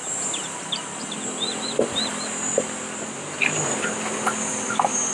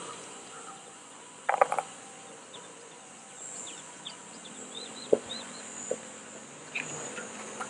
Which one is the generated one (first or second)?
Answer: second